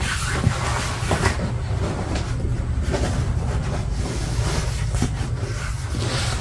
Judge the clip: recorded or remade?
recorded